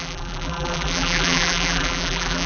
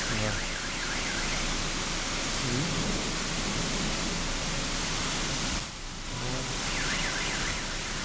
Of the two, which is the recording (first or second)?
second